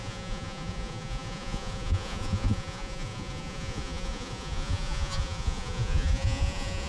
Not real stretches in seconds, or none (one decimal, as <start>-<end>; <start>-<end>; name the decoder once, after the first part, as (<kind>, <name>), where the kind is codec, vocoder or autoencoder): 0.0-6.9 (vocoder, Vocos)